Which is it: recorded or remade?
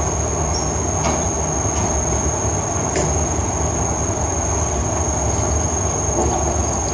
recorded